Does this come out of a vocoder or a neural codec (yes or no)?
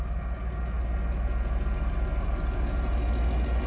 no